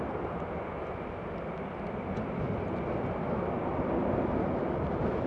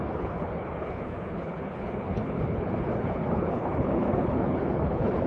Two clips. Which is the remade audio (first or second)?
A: second